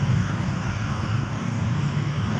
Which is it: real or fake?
fake